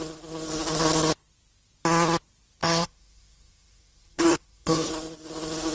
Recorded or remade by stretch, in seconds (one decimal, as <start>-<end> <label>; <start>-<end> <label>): 0.0-2.6 recorded; 2.6-4.9 remade; 4.9-5.7 recorded

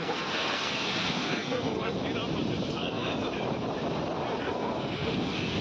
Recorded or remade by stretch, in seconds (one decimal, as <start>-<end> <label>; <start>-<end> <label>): 0.0-2.0 remade; 2.0-2.7 recorded; 2.7-3.1 remade; 3.1-4.4 recorded; 4.4-5.6 remade

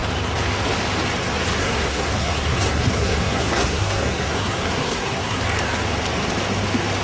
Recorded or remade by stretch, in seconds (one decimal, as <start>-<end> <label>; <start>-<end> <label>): 0.0-1.6 recorded; 1.6-5.4 remade; 5.4-7.0 recorded

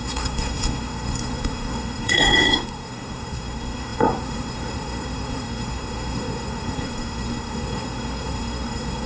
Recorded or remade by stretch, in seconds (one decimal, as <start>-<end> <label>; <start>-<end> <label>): 0.0-9.1 remade

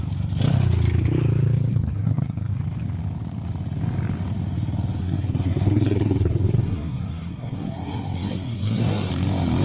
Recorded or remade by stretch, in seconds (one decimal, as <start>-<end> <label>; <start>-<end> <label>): 0.0-1.7 recorded; 1.7-2.5 remade; 2.5-5.0 recorded; 5.0-9.1 remade; 9.1-9.6 recorded

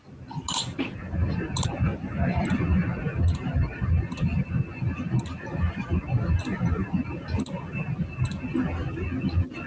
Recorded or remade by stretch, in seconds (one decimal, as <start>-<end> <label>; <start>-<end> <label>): 0.0-9.7 recorded

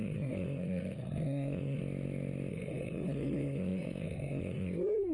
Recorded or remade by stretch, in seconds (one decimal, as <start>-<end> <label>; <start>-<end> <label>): 0.0-1.8 remade; 1.8-2.5 recorded; 2.5-5.1 remade

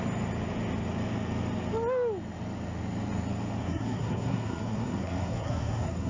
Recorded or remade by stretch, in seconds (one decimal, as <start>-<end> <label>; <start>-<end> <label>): 0.0-3.6 recorded; 3.6-6.1 remade